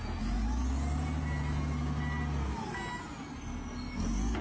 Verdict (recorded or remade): recorded